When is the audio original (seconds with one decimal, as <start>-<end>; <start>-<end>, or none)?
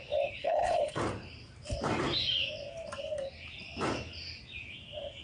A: 0.0-0.4; 1.0-5.2